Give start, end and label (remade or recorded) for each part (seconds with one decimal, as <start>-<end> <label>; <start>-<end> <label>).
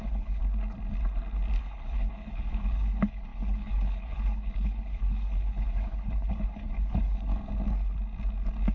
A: 0.0-0.4 remade; 0.4-1.6 recorded; 1.6-7.3 remade; 7.3-8.7 recorded